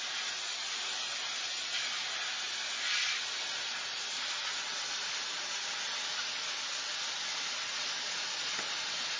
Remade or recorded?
recorded